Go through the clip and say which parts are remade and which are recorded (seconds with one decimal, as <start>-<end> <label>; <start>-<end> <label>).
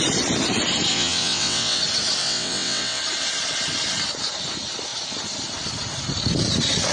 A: 0.0-0.9 recorded; 0.9-1.8 remade; 1.8-2.2 recorded; 2.2-3.0 remade; 3.0-6.9 recorded